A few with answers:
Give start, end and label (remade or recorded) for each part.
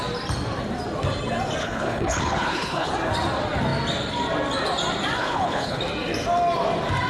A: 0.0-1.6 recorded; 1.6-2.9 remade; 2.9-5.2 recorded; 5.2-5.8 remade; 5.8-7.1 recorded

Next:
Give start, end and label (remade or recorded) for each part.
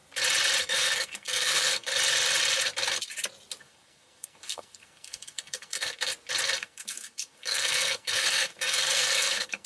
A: 0.0-0.6 recorded; 0.6-1.9 remade; 1.9-3.6 recorded; 3.6-6.1 remade; 6.1-6.6 recorded; 6.6-9.7 remade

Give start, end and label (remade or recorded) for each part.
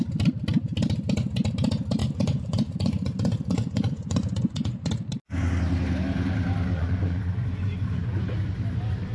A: 0.0-2.0 recorded; 2.0-4.9 remade; 4.9-6.7 recorded; 6.7-8.2 remade; 8.2-9.1 recorded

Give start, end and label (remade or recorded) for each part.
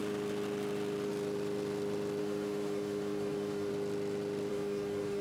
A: 0.0-2.2 recorded; 2.2-3.7 remade; 3.7-4.5 recorded; 4.5-5.2 remade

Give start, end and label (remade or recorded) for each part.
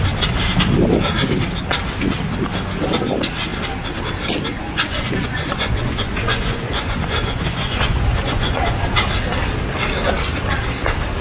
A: 0.0-4.5 recorded; 4.5-8.9 remade; 8.9-11.2 recorded